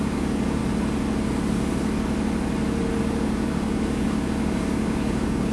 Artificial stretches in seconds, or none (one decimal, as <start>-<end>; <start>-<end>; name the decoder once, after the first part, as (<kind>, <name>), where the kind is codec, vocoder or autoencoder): 0.0-0.6 (codec, DAC); 3.0-5.5